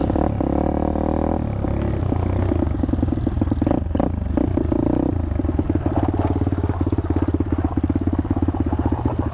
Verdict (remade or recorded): recorded